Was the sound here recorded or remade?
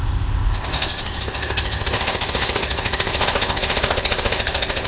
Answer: remade